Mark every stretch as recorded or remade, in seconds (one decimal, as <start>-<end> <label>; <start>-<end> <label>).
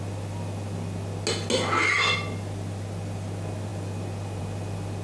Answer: 0.0-5.0 recorded